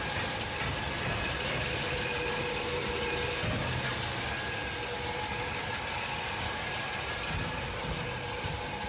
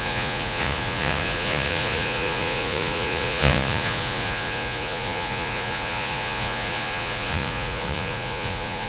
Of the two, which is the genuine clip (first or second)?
first